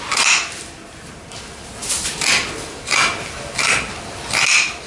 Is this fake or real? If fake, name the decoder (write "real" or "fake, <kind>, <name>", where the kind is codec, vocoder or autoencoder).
real